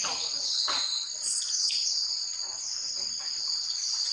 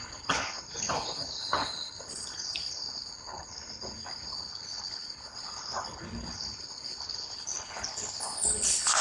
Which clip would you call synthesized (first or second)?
second